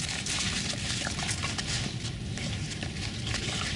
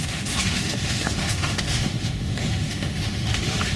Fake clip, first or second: second